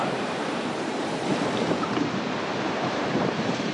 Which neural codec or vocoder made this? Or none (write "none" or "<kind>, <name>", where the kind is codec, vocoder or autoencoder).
vocoder, BigVGAN v2